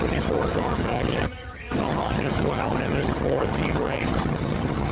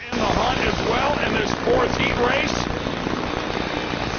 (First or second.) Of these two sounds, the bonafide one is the second